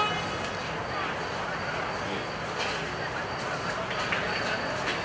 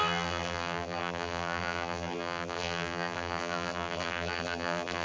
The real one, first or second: first